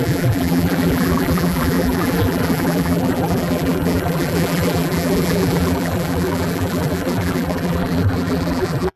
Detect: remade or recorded remade